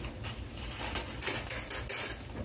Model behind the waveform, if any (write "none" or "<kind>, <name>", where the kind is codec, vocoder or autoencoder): none